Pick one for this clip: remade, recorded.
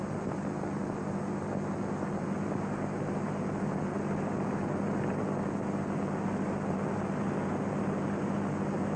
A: recorded